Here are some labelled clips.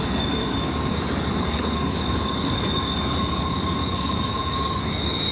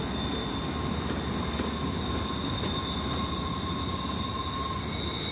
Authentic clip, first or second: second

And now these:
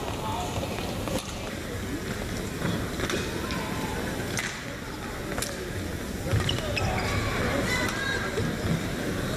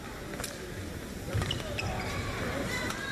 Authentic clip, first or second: first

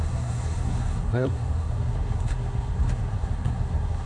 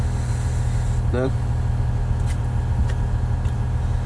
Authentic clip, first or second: second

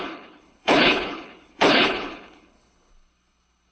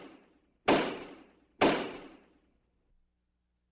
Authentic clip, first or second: second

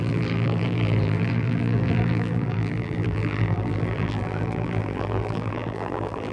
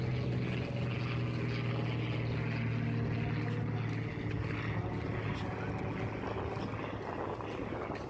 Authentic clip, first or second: second